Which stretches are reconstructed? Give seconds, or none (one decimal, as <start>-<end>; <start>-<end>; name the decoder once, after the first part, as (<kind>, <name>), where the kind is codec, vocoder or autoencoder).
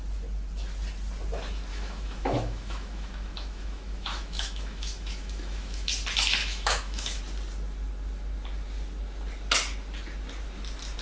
1.7-5.9 (autoencoder, DAC-VAE); 6.4-7.2